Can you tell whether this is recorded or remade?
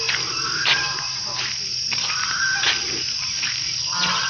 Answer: recorded